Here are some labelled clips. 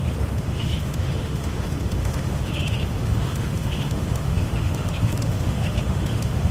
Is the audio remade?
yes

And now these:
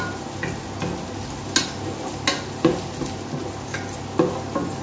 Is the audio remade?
no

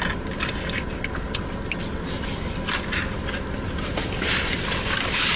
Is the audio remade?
no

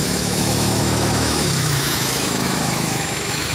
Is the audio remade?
yes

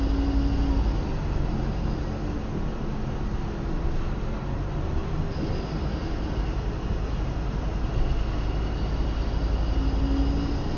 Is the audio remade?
no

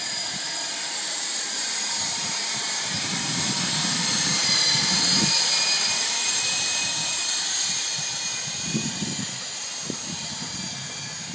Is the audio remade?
yes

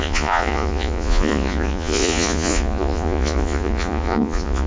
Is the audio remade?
yes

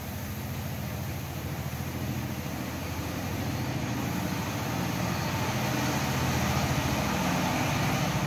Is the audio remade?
no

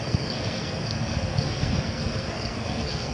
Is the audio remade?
yes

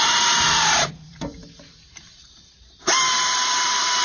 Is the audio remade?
yes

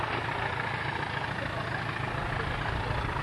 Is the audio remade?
no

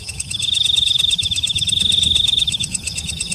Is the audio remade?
yes